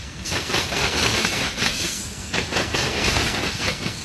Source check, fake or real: fake